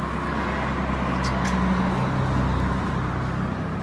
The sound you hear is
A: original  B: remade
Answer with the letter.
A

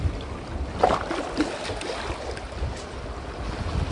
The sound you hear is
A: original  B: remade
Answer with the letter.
A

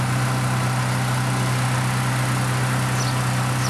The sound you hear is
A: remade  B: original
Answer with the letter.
B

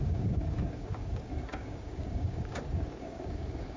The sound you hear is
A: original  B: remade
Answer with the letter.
B